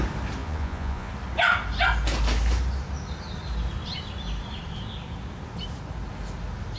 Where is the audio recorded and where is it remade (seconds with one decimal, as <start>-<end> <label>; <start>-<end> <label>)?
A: 0.0-0.4 recorded; 0.4-1.1 remade; 1.1-6.8 recorded